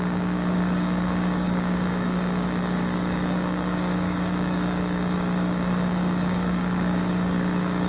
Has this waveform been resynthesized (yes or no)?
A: yes